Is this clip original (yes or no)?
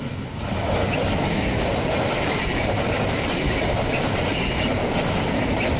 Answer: yes